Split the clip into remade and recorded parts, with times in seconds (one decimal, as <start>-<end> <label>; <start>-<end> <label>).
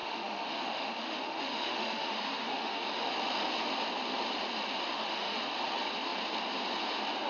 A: 0.0-3.1 remade; 3.1-4.8 recorded; 4.8-5.4 remade; 5.4-7.3 recorded